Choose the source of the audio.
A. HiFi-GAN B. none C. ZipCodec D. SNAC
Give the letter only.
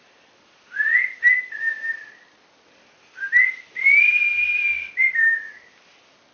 B